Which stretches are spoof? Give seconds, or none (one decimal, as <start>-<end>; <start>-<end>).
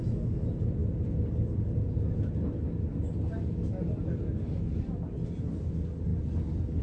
0.8-2.3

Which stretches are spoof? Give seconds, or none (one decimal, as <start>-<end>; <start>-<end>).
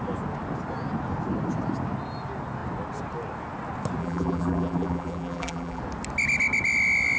4.0-5.8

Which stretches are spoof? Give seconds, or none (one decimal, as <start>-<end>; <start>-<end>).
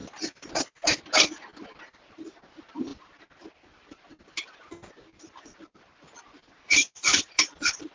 1.6-7.9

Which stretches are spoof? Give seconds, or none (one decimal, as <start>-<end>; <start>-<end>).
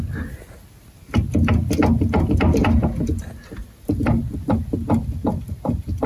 4.2-6.1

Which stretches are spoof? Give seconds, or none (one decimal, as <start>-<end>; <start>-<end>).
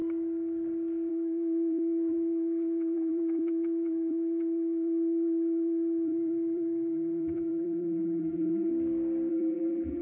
1.1-8.7; 9.3-10.0